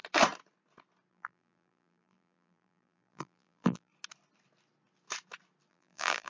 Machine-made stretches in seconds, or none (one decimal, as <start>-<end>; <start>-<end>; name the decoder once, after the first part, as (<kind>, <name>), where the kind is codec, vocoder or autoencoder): 1.1-3.9 (vocoder, BigVGAN v2); 5.7-6.3